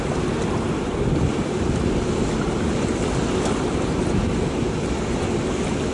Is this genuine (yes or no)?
yes